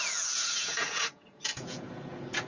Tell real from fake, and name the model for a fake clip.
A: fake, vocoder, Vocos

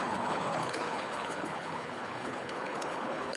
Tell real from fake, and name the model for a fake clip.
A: fake, codec, HILCodec